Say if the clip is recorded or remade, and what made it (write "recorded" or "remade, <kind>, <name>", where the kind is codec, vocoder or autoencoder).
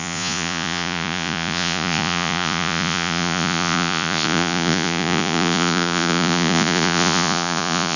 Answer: remade, vocoder, Vocos